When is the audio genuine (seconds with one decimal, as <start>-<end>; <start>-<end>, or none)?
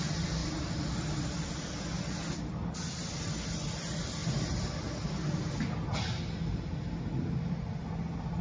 0.0-8.4